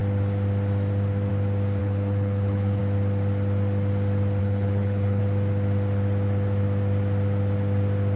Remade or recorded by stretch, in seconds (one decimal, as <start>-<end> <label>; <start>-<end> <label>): 0.0-1.8 recorded; 1.8-2.8 remade; 2.8-4.4 recorded; 4.4-5.2 remade; 5.2-8.2 recorded